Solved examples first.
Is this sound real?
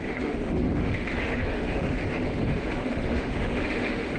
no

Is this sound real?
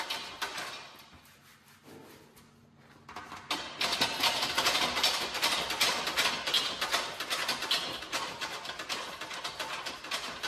yes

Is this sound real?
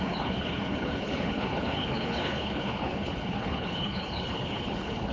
no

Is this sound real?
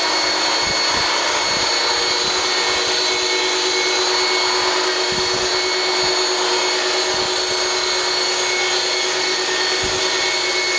yes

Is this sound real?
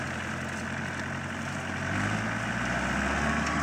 yes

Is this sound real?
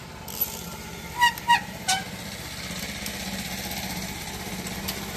yes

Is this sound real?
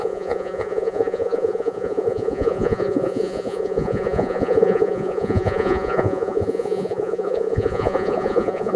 no